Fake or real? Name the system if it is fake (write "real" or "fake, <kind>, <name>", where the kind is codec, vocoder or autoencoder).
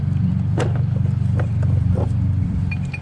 fake, vocoder, BigVGAN v2